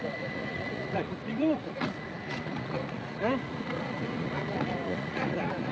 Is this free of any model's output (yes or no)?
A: no